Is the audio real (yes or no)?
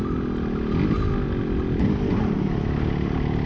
yes